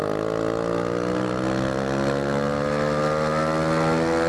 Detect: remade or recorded recorded